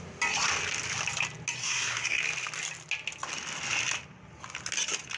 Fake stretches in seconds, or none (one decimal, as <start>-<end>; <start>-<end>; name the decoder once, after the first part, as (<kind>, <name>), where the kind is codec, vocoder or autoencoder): 1.6-2.2 (codec, SNAC)